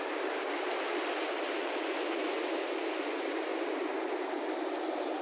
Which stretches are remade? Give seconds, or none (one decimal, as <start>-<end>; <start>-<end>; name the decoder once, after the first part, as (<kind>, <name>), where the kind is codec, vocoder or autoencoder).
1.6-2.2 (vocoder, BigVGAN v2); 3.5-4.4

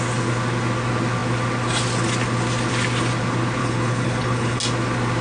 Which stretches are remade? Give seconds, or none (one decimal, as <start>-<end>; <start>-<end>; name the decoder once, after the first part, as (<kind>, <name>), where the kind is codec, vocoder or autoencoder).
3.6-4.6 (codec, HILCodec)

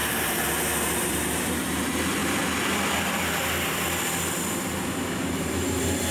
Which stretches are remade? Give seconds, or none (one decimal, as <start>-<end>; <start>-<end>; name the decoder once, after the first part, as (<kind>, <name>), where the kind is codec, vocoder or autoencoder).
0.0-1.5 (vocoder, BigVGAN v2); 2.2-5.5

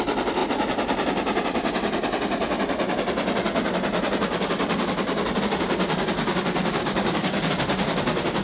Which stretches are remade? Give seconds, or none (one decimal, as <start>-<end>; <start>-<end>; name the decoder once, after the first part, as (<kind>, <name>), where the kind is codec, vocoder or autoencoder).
6.8-7.5 (codec, DAC)

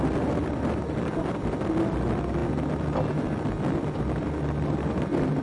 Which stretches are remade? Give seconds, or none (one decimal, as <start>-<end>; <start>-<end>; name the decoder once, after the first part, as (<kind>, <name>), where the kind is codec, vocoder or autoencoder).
0.0-2.4 (vocoder, BigVGAN v2); 4.3-5.4